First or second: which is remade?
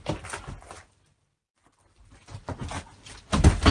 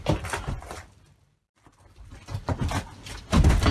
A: second